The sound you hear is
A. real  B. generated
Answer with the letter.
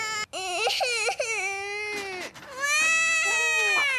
A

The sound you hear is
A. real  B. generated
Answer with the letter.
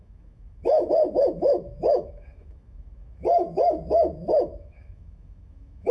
B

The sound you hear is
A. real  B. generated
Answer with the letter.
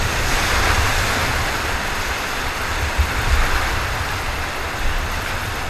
A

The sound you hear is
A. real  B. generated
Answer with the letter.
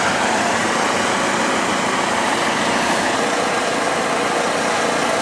A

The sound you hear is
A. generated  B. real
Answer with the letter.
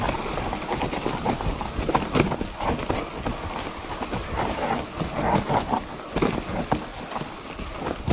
B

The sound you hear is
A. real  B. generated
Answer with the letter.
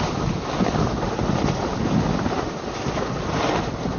A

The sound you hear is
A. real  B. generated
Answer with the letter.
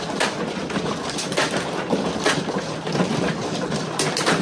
B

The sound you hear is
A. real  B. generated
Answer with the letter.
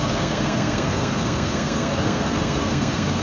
B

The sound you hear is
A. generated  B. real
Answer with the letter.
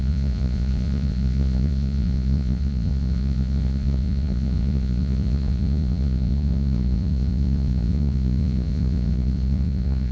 A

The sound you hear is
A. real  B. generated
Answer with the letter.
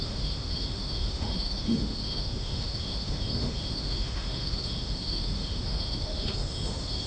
B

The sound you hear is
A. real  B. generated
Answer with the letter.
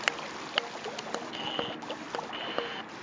A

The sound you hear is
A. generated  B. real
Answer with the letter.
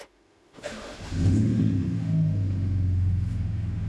A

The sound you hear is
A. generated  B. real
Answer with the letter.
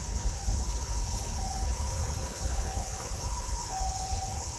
A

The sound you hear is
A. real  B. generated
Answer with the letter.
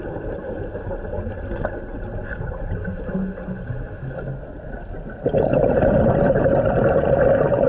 A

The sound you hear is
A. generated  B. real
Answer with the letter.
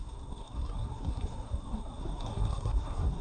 A